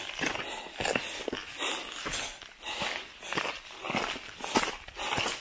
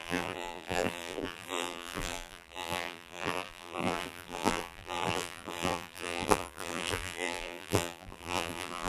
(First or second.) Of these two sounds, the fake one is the second